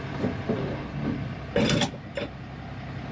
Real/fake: real